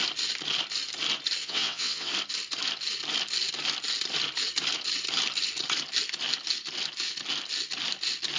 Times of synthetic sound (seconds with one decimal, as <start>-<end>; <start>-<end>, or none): 1.4-2.1